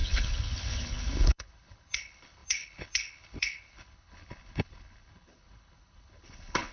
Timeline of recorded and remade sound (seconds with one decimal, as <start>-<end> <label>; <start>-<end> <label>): 0.0-6.7 remade